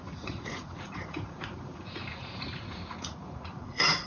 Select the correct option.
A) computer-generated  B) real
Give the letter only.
A